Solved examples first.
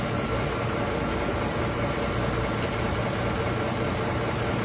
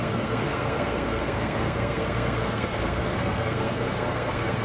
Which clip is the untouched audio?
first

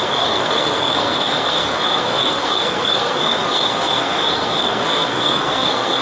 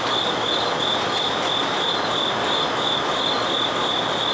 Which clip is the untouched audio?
second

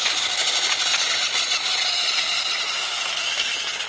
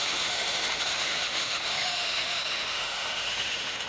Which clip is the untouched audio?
first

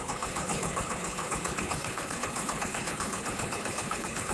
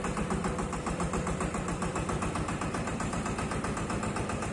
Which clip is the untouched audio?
second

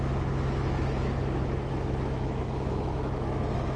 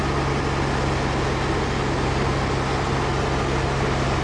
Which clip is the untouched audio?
second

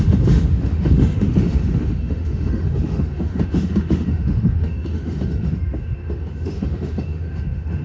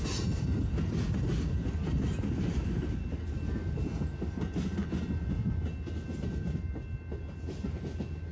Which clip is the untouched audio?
second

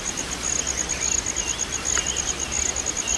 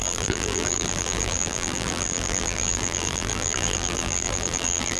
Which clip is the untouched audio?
first